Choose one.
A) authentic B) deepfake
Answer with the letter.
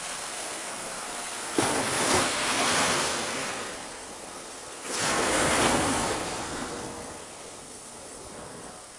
B